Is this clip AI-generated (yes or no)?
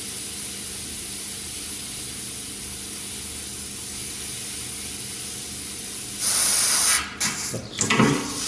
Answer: no